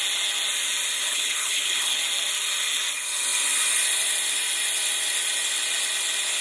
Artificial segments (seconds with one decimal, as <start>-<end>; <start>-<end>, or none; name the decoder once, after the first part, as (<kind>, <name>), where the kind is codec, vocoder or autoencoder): 1.0-2.0 (codec, HILCodec)